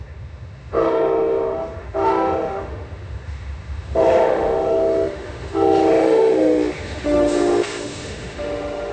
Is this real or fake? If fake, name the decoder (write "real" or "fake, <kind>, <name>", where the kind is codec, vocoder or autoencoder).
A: fake, autoencoder, DAC-VAE